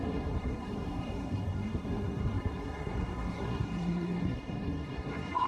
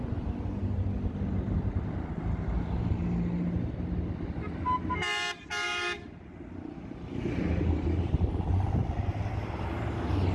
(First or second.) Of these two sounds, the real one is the second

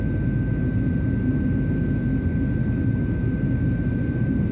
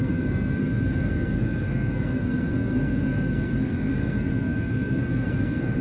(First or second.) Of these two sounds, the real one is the first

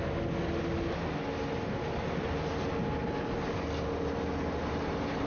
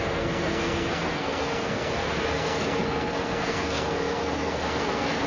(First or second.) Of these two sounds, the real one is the first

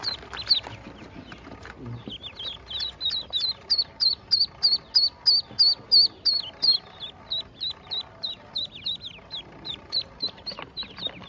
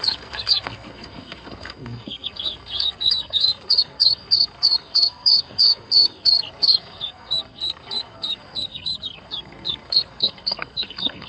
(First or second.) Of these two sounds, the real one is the first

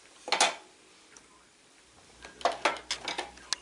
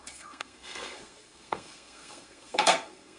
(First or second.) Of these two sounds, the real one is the first